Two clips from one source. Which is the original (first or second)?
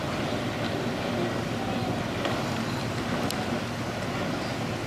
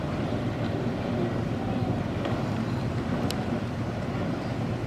first